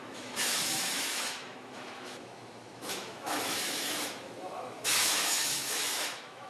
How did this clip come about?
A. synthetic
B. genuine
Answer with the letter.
A